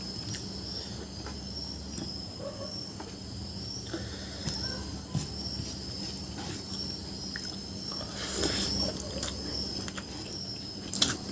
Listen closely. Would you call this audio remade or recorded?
recorded